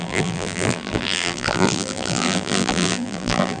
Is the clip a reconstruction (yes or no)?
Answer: yes